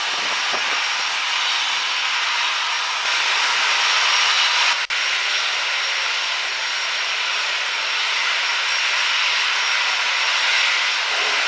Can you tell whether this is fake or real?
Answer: real